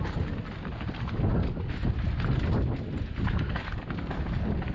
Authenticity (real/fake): real